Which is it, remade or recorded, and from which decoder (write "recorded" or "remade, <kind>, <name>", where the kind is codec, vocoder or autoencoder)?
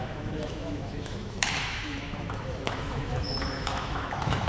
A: remade, autoencoder, DAC-VAE